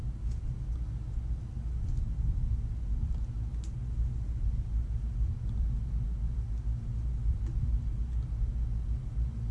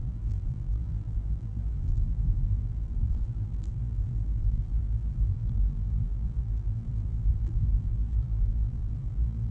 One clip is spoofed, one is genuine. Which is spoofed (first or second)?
second